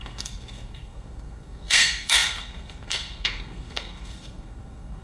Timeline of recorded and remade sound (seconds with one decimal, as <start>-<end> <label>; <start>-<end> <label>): 0.0-5.0 remade